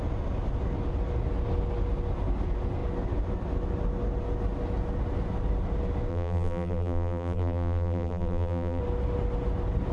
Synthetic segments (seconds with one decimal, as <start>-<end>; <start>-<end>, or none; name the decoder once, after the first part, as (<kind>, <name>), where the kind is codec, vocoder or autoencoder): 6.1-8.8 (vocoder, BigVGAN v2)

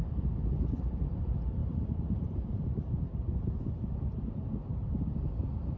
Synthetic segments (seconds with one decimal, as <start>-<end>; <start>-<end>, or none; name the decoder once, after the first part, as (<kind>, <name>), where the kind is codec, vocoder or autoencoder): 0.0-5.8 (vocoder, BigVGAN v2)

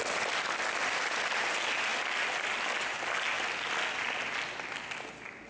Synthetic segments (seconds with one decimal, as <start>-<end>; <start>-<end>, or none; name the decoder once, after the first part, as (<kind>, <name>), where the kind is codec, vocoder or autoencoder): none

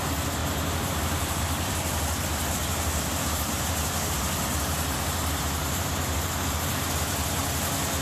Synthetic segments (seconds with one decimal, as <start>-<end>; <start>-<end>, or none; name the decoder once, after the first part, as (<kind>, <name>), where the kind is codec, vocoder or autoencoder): 0.4-1.7 (vocoder, BigVGAN v2); 2.6-7.4

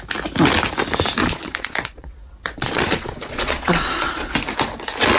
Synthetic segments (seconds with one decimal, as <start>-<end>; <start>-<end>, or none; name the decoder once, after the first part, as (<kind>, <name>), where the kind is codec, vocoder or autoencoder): 1.2-4.3 (vocoder, Vocos)